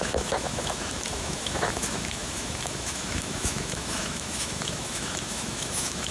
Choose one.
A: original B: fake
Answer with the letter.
B